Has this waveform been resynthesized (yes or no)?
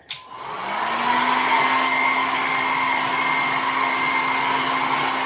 no